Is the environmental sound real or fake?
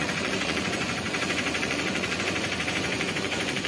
fake